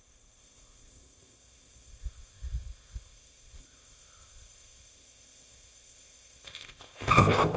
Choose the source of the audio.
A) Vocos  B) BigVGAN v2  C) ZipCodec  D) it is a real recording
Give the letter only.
C